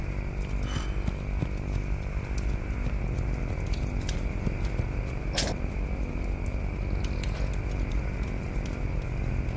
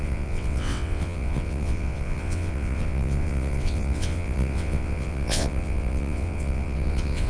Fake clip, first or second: second